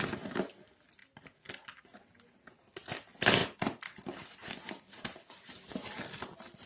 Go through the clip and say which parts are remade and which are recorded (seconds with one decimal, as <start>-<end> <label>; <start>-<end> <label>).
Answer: 0.0-6.7 recorded